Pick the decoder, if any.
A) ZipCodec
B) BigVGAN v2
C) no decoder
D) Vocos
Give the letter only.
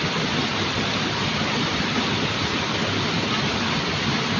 C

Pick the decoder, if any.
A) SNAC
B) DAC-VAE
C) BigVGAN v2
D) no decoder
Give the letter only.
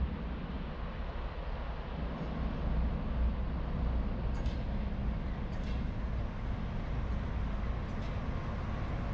D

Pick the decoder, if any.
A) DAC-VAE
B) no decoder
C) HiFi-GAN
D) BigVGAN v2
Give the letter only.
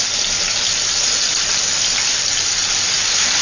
B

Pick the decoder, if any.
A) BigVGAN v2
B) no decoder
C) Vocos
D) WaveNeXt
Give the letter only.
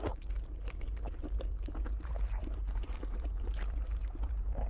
A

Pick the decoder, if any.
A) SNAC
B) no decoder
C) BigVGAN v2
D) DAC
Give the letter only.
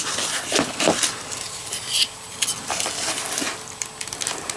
B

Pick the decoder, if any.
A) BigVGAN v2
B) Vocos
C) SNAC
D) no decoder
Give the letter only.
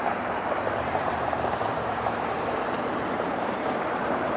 A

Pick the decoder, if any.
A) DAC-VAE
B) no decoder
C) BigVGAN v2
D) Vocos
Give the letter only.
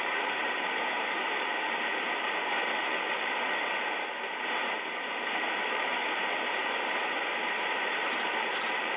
C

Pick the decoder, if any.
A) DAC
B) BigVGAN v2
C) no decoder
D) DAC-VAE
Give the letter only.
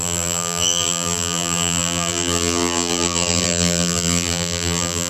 B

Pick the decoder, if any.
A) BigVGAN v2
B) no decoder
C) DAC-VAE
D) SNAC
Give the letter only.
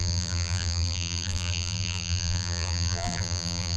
A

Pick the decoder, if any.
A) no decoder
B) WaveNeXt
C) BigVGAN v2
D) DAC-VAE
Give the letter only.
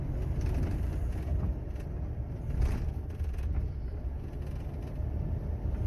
A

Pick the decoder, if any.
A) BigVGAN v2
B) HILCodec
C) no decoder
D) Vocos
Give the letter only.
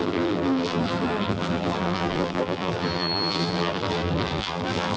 A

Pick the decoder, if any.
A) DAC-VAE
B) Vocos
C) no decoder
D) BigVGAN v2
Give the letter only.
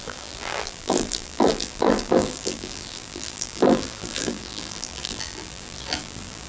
D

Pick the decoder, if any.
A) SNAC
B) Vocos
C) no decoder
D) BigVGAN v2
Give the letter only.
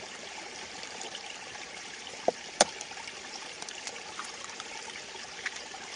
D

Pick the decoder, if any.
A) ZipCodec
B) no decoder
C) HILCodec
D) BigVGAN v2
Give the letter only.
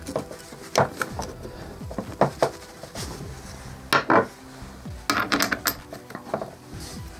B